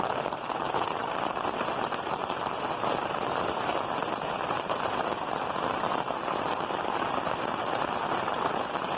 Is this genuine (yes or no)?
no